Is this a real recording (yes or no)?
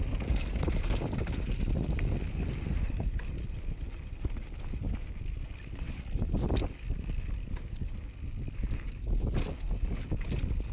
yes